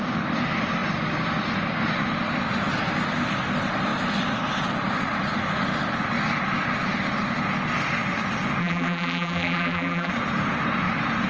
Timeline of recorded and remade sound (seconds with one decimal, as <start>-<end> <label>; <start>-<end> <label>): 0.0-8.6 recorded; 8.6-10.1 remade; 10.1-11.3 recorded